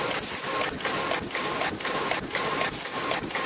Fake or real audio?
real